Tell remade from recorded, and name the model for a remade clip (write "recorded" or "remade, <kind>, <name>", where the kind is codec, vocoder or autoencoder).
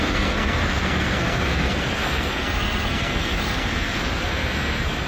remade, codec, SNAC